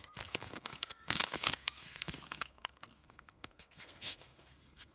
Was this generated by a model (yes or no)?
yes